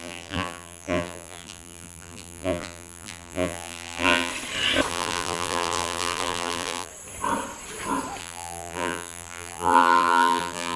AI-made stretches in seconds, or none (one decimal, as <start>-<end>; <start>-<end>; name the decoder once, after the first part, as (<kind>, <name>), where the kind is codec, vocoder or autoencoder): 0.0-4.3 (vocoder, BigVGAN v2); 4.9-6.9; 8.2-10.8